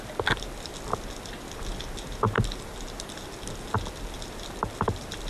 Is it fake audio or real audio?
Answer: real